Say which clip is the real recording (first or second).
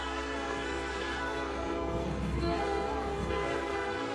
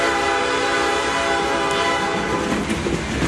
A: second